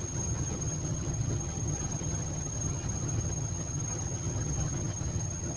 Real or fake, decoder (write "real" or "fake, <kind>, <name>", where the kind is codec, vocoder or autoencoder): fake, vocoder, HiFi-GAN